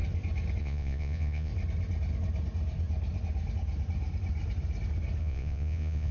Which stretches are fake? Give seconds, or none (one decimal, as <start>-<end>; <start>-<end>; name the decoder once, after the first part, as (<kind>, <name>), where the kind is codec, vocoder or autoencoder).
0.6-1.5 (vocoder, Vocos); 5.2-6.1